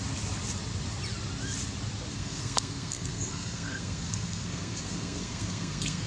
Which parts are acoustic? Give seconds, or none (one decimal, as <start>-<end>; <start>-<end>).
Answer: 0.0-2.1